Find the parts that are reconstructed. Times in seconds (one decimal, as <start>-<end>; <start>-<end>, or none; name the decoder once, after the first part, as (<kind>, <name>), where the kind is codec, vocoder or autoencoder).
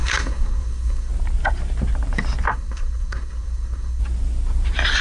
0.0-1.1 (codec, SNAC); 2.5-4.0